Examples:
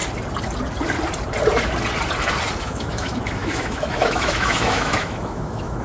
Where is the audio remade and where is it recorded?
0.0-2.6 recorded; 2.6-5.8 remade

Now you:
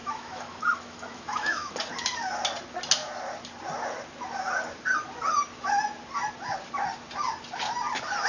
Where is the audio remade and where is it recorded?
0.0-1.7 remade; 1.7-8.3 recorded

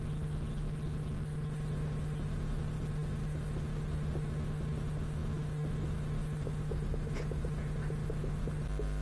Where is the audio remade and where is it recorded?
0.0-9.0 recorded

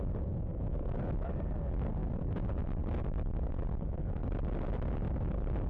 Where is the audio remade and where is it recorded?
0.0-0.5 recorded; 0.5-1.3 remade; 1.3-5.7 recorded

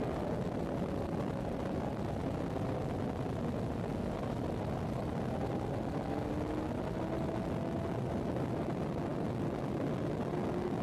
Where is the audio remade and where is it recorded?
0.0-10.8 recorded